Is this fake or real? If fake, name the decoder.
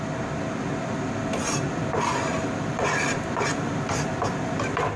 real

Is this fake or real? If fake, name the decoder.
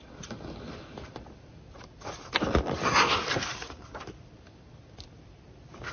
fake, vocoder, BigVGAN v2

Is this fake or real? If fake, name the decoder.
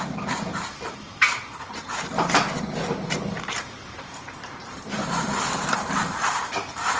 fake, vocoder, BigVGAN v2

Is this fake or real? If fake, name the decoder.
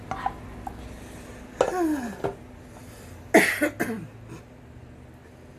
real